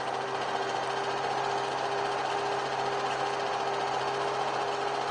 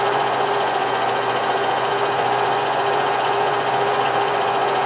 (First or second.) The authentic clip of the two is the first